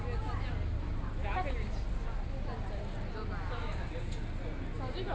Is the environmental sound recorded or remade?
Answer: recorded